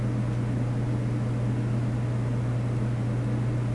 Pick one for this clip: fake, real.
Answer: real